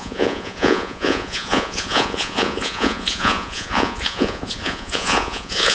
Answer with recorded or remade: remade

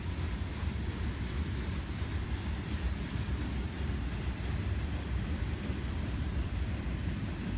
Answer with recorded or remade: remade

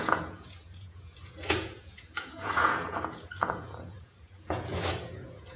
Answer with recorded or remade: remade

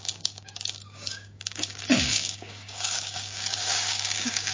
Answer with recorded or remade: remade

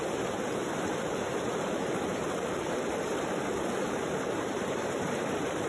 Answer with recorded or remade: remade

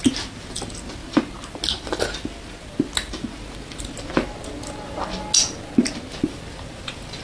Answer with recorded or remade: recorded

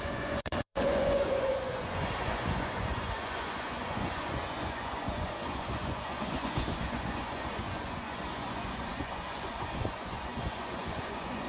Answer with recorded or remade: remade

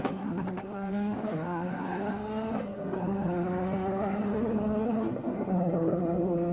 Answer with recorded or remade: remade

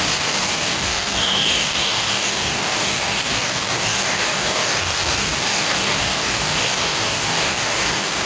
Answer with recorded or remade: remade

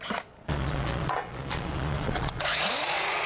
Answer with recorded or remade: remade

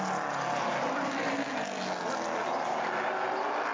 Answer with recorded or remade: recorded